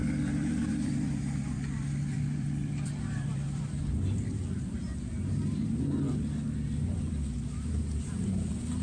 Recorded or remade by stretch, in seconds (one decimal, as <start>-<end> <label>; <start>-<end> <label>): 0.0-5.0 remade; 5.0-8.8 recorded